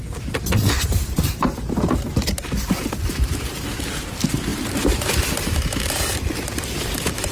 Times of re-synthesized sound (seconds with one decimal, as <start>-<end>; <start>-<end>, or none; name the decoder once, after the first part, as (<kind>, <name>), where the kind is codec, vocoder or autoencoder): 0.0-7.3 (vocoder, BigVGAN v2)